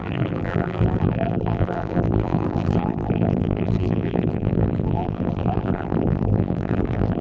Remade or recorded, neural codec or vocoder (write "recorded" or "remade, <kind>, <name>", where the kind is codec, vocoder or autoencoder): remade, vocoder, BigVGAN v2